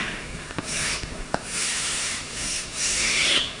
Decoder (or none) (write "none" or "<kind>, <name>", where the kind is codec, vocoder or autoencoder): codec, SNAC